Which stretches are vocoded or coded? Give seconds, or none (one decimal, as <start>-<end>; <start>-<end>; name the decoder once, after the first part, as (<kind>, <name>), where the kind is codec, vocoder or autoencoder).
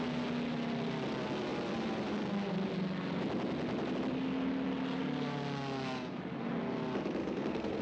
7.2-7.8 (codec, SNAC)